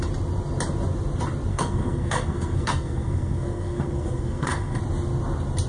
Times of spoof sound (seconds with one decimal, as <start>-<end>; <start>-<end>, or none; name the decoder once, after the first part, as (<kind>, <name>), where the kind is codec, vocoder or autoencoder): 1.5-4.8 (codec, SNAC)